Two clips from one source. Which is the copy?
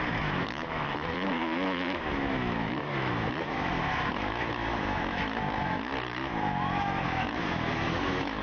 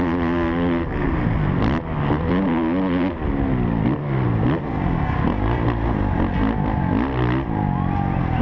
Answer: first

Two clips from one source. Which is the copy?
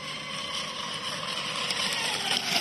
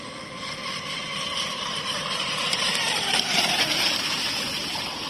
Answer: second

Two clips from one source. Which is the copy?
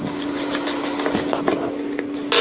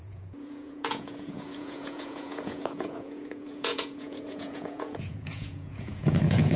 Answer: second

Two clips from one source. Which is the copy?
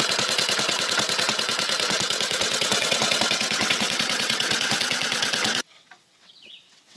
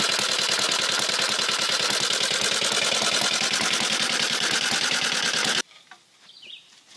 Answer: first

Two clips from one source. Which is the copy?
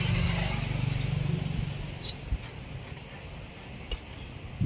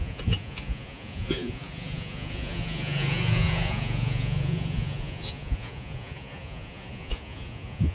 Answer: second